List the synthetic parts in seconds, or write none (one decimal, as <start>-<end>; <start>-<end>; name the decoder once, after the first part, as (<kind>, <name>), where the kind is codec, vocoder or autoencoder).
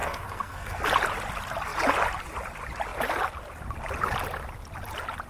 0.0-0.8 (codec, SNAC)